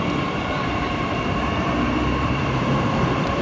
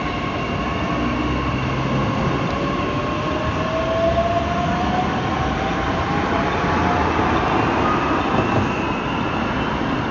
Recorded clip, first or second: second